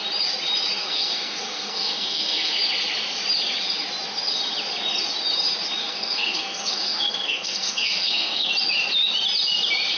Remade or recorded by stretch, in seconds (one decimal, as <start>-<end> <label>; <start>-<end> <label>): 0.0-0.8 recorded; 0.8-2.6 remade; 2.6-5.8 recorded; 5.8-8.5 remade; 8.5-10.0 recorded